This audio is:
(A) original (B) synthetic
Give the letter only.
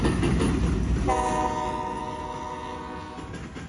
A